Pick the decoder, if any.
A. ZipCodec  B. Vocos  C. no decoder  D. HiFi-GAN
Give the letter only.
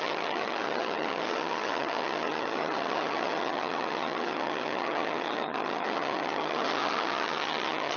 D